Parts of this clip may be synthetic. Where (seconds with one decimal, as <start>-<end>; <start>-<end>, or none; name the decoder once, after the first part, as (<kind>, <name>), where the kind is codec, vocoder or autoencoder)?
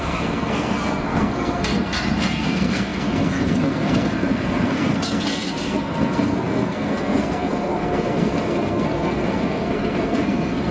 0.0-10.7 (codec, SNAC)